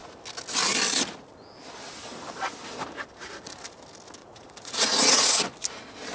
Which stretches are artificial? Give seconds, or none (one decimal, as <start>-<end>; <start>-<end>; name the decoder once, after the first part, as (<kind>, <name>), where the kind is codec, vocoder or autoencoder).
4.2-5.4 (vocoder, Vocos)